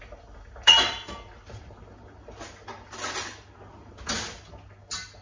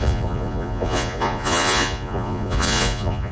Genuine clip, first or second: first